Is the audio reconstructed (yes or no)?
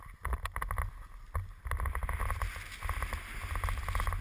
no